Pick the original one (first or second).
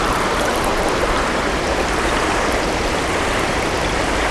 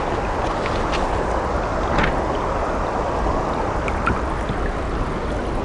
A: second